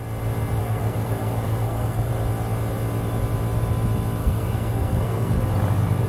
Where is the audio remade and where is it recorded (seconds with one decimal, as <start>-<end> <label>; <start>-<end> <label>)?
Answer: 0.0-0.6 recorded; 0.6-2.1 remade; 2.1-4.2 recorded; 4.2-5.4 remade; 5.4-6.1 recorded